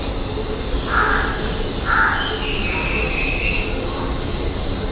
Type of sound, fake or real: real